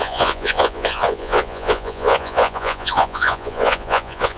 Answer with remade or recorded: remade